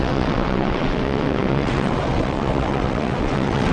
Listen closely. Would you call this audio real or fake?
fake